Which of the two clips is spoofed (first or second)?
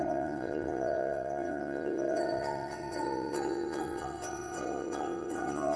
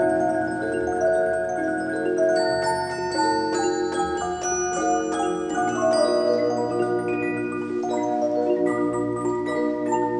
first